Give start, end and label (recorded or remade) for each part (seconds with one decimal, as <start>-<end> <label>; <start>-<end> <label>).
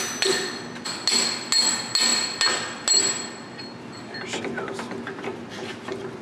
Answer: 0.0-6.2 recorded